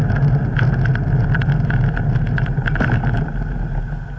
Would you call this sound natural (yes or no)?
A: yes